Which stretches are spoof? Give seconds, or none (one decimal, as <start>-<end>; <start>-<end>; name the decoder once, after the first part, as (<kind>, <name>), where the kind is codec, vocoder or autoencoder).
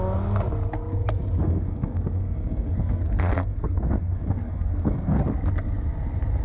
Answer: 1.4-5.2 (codec, SNAC)